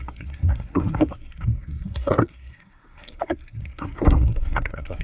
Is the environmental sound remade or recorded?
remade